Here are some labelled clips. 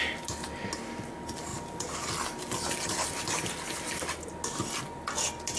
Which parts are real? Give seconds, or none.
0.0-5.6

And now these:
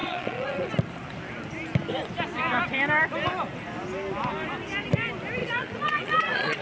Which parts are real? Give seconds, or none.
0.7-5.4

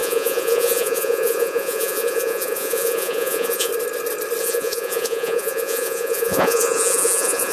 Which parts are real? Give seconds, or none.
3.7-4.4

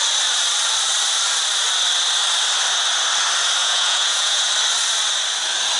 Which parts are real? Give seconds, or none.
0.0-3.6; 4.5-5.8

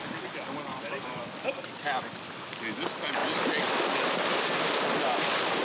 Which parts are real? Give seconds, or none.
0.0-0.7; 1.2-5.6

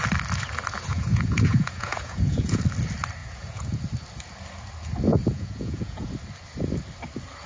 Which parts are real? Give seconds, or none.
0.0-0.9; 2.6-3.2; 3.8-5.1; 6.1-7.5

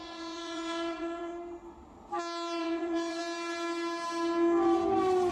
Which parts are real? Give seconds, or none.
1.3-2.6; 3.2-5.3